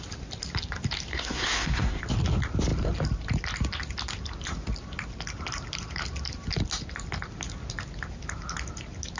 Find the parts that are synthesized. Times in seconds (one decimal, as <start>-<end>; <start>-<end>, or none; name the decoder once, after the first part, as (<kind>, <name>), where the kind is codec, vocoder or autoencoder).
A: 1.1-2.0 (codec, SNAC)